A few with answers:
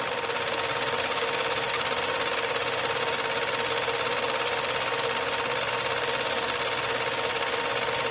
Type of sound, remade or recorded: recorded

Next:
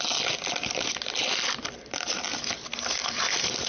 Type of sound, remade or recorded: recorded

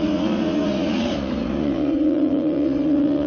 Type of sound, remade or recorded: remade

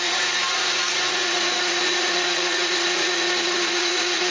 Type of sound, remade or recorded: remade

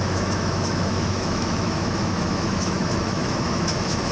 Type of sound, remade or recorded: remade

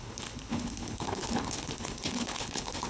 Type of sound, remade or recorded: remade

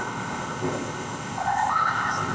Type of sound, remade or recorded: remade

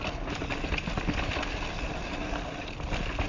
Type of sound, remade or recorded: recorded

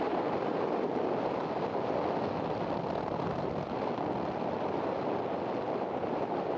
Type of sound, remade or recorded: recorded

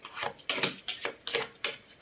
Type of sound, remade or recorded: recorded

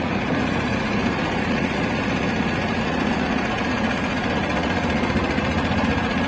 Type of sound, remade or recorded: remade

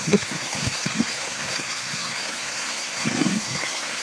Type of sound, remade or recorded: remade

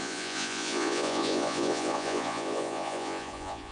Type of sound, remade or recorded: remade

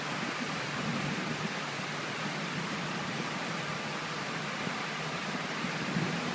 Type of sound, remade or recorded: remade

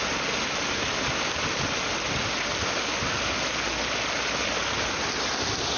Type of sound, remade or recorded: recorded